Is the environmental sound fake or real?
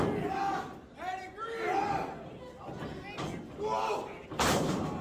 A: real